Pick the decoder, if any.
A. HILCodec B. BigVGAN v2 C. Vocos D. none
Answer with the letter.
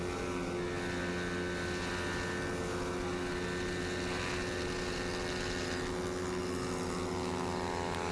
D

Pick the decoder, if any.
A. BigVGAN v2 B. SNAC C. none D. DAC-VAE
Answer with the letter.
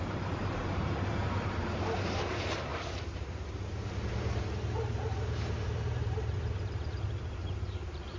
A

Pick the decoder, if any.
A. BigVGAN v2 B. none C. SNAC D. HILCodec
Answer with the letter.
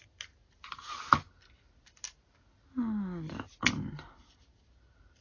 B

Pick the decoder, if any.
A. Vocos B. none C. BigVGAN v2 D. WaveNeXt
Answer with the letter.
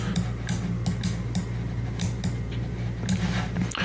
B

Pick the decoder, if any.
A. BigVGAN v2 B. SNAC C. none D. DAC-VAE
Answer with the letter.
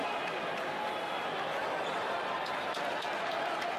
C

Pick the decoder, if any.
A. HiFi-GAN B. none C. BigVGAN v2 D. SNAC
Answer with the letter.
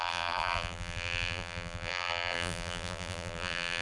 C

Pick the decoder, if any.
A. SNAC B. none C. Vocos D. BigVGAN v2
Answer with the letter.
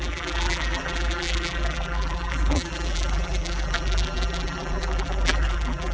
D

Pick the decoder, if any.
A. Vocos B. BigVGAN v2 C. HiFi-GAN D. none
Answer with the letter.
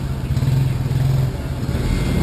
D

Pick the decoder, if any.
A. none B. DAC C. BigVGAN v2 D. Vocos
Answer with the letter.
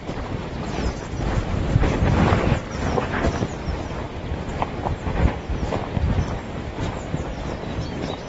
A